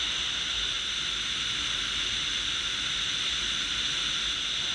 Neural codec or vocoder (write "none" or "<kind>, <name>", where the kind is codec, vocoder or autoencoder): none